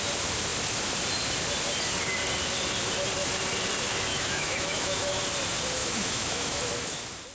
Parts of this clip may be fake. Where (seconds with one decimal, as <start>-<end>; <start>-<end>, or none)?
4.1-5.2; 5.8-6.6